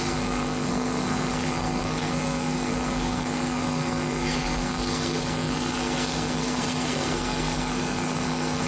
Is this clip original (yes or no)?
no